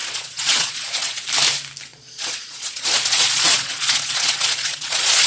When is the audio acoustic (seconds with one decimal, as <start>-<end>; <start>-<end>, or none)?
1.2-1.9